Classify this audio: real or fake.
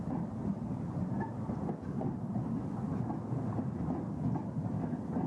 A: real